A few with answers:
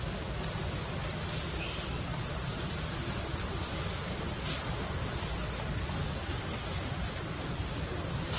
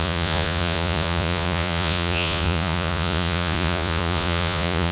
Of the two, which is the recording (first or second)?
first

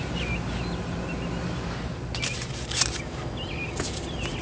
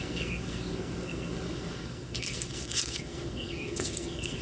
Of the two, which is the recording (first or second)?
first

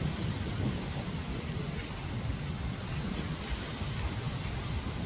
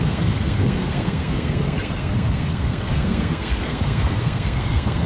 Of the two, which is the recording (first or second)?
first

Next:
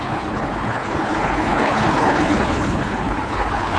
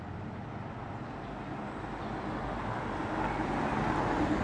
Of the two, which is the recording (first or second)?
second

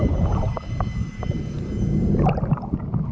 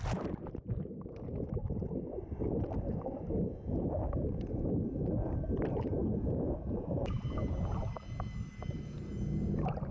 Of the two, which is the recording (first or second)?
second